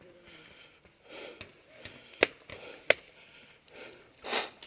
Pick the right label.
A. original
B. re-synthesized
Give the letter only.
A